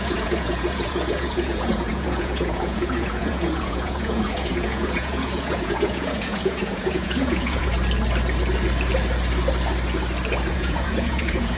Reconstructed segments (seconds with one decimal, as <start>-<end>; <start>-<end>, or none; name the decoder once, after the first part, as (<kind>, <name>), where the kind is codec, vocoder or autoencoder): 0.0-7.7 (vocoder, Vocos); 10.5-11.6